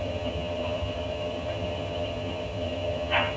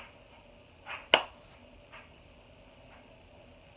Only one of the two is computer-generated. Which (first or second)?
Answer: first